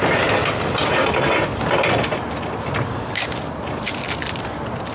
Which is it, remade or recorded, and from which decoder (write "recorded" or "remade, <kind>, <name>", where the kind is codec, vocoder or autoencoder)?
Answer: recorded